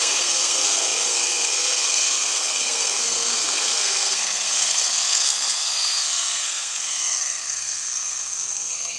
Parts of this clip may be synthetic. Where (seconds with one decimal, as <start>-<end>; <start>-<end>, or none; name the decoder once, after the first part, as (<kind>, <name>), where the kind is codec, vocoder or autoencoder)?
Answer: 0.0-9.0 (codec, SNAC)